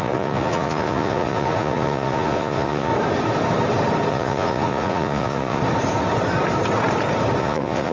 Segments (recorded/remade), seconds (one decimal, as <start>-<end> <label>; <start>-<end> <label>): 0.0-2.9 remade; 2.9-4.1 recorded; 4.1-5.6 remade; 5.6-7.4 recorded; 7.4-7.9 remade